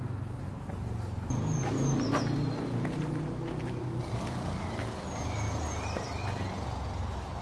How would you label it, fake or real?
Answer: real